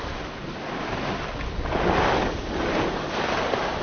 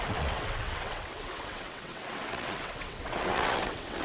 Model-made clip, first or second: second